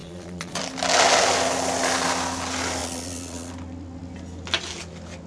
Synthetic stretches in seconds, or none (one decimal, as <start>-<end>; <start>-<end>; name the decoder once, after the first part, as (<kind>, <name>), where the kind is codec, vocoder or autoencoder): 0.0-0.6 (vocoder, Vocos); 2.8-3.5